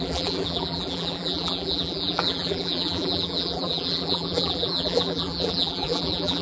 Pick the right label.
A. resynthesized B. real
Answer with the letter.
A